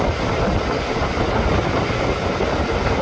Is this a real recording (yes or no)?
yes